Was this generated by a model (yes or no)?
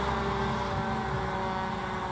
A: no